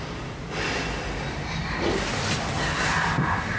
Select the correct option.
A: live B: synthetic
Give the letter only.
A